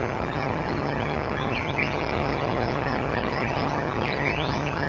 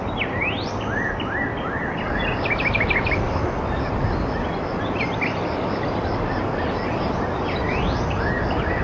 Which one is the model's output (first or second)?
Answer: first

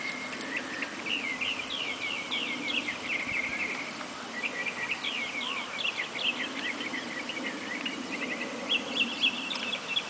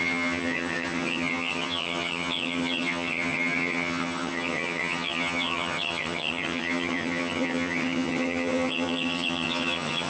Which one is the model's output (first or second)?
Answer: second